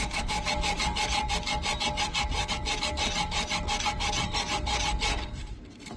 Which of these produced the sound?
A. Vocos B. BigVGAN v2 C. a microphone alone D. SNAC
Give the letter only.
C